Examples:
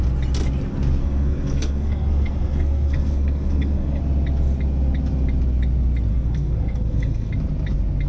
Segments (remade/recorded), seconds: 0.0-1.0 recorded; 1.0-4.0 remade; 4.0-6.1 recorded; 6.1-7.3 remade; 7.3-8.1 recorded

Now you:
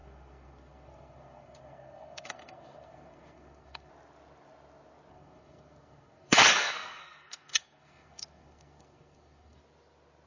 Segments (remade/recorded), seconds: 0.0-3.9 remade; 3.9-5.1 recorded; 5.1-9.6 remade; 9.6-10.3 recorded

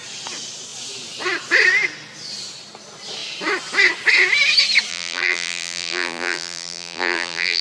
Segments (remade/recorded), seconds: 0.0-4.9 recorded; 4.9-7.6 remade

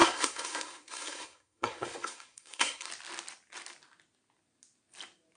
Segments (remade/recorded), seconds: 0.0-2.9 remade; 2.9-5.4 recorded

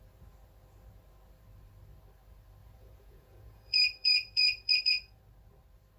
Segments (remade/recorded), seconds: 0.0-2.6 recorded; 2.6-5.2 remade; 5.2-6.0 recorded